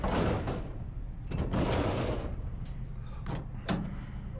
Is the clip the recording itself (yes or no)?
yes